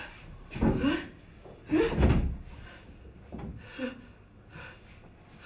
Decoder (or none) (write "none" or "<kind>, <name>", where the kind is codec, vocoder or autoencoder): none